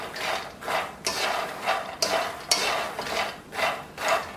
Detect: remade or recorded recorded